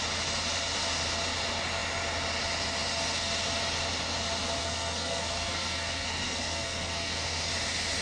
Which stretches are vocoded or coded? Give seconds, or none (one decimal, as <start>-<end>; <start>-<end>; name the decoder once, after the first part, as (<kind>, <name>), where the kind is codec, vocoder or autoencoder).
4.6-7.5 (codec, SNAC)